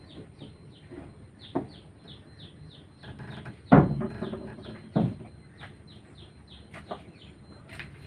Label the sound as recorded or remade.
recorded